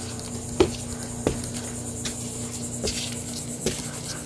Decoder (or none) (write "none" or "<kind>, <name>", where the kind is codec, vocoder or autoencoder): none